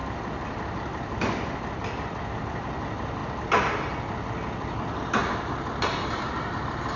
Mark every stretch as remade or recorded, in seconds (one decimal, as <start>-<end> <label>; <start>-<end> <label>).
0.0-7.0 recorded